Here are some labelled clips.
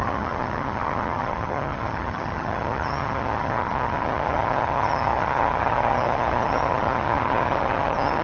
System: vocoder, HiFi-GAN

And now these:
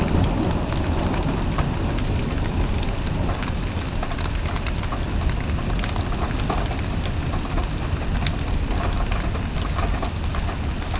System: none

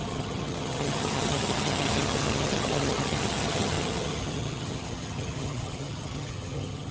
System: vocoder, HiFi-GAN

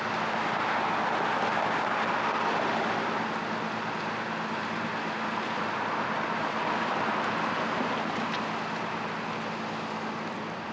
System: none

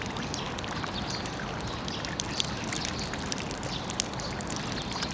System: none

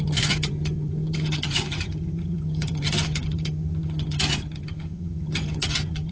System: vocoder, HiFi-GAN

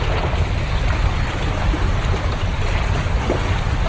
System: none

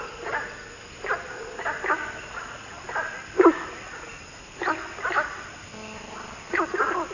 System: none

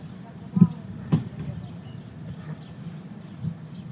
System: none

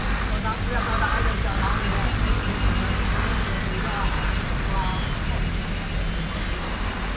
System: none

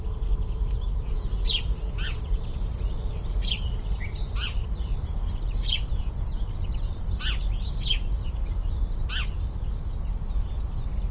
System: none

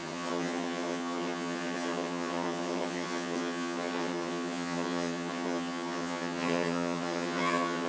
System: vocoder, HiFi-GAN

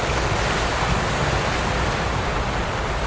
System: none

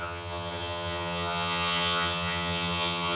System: vocoder, HiFi-GAN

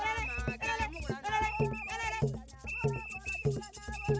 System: none